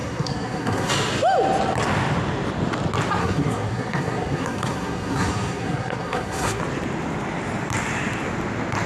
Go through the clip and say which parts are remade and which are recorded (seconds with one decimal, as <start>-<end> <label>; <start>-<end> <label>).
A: 0.0-0.9 remade; 0.9-3.2 recorded; 3.2-6.6 remade; 6.6-8.9 recorded